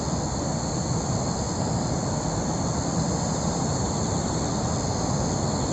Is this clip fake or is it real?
real